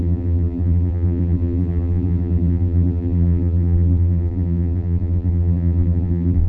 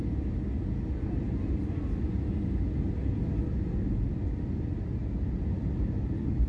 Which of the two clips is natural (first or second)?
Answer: second